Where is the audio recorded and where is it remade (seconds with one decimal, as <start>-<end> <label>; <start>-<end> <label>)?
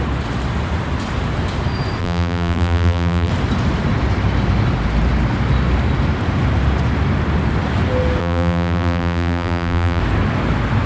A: 0.0-2.0 recorded; 2.0-3.3 remade; 3.3-8.2 recorded; 8.2-10.0 remade; 10.0-10.9 recorded